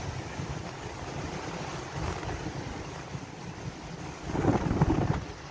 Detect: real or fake real